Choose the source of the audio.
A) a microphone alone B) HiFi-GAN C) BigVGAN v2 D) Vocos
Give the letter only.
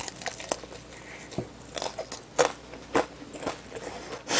A